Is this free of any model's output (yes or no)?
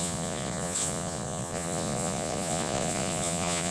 no